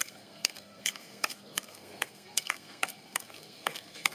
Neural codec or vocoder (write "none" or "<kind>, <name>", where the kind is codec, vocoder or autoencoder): codec, SNAC